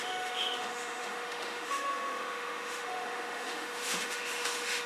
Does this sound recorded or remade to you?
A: remade